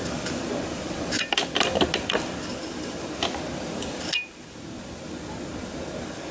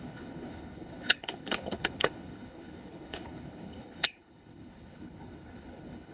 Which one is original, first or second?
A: first